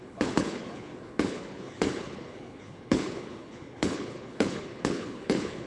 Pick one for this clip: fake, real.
fake